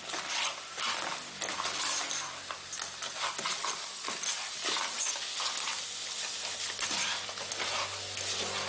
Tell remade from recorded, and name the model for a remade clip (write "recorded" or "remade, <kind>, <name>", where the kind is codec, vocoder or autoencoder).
recorded